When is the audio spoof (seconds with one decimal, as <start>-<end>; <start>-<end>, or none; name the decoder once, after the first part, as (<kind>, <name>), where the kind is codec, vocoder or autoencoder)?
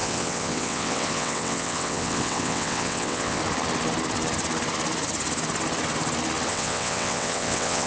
0.0-3.4 (vocoder, WaveNeXt); 6.5-7.9